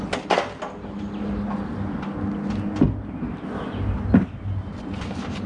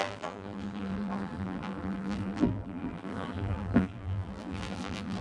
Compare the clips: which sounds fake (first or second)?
second